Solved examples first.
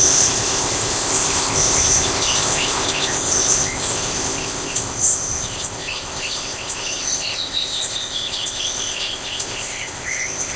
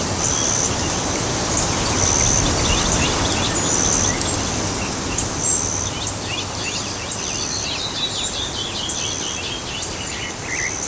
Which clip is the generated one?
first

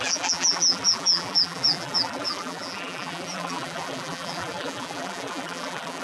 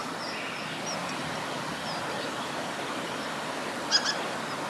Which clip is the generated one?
first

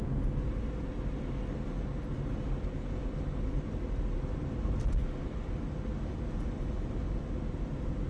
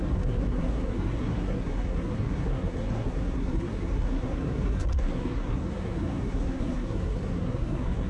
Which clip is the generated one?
second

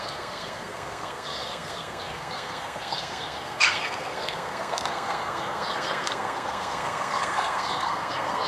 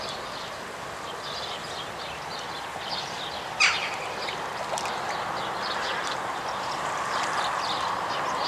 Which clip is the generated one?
first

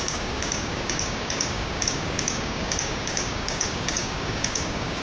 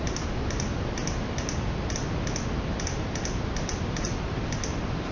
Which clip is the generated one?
first